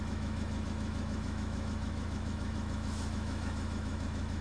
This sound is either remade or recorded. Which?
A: remade